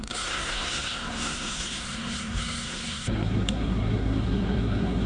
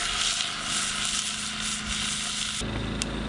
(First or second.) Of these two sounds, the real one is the second